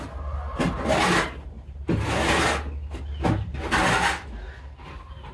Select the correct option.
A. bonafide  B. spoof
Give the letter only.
A